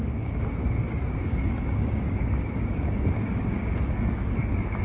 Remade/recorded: remade